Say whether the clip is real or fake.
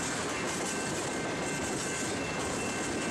real